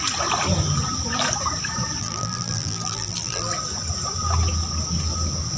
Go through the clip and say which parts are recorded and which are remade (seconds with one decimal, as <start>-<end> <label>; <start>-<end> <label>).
0.0-2.0 recorded; 2.0-3.5 remade; 3.5-5.6 recorded